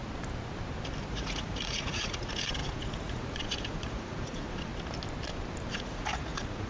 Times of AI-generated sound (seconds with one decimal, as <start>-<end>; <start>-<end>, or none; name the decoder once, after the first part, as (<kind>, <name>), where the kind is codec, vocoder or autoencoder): 1.1-4.7 (vocoder, Vocos); 5.7-6.7